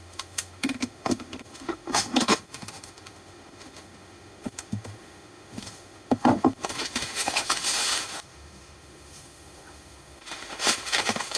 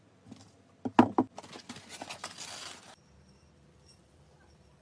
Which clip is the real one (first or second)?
second